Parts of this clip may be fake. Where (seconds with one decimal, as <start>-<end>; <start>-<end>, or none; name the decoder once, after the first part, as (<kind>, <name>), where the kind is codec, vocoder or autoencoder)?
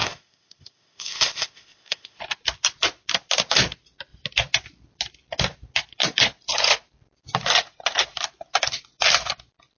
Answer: 0.0-2.2 (codec, ZipCodec)